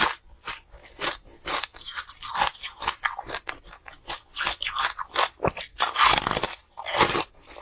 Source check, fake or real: fake